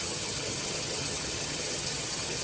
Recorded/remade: remade